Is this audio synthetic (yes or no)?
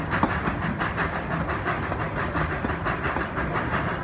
no